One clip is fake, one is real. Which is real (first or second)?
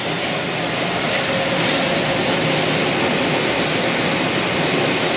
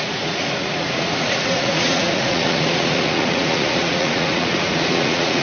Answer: first